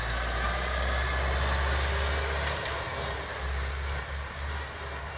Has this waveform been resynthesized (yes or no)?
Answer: no